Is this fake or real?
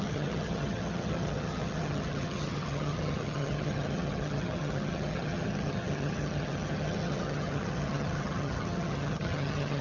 fake